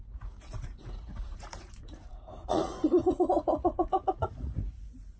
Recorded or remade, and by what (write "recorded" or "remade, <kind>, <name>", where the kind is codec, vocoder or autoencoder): remade, vocoder, Vocos